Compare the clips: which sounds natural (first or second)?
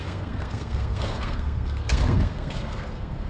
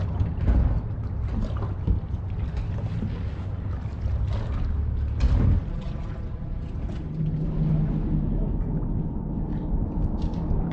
second